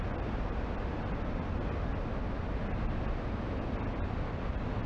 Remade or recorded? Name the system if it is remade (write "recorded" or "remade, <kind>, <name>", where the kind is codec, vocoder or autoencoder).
recorded